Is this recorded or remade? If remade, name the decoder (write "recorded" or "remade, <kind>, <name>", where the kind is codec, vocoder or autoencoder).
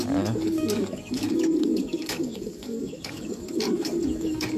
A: remade, codec, DAC